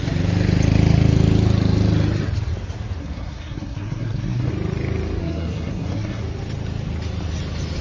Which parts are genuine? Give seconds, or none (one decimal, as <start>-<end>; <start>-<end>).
0.0-3.0; 4.5-5.2; 6.2-7.8